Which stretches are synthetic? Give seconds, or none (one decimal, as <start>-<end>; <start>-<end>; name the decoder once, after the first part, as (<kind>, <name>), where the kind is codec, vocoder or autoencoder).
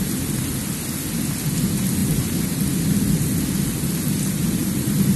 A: 4.6-5.2 (vocoder, BigVGAN v2)